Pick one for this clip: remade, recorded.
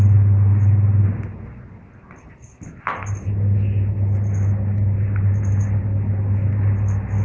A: recorded